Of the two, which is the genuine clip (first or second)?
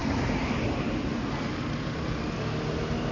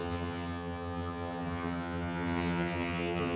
first